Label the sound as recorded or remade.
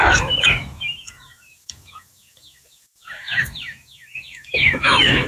remade